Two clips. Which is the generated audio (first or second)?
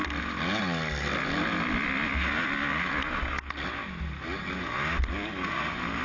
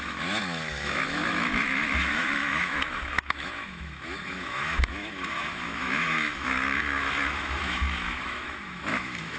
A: second